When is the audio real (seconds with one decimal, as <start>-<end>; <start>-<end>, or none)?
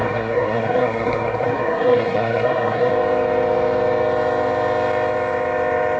2.9-6.0